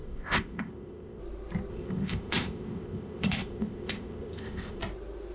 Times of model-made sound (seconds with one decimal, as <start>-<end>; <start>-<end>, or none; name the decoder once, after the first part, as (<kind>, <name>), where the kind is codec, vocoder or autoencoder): 0.0-1.2 (codec, ZipCodec); 1.7-4.8